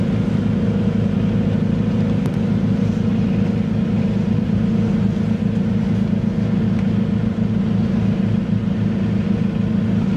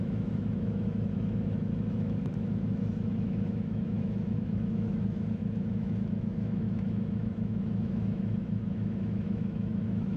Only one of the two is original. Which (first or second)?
first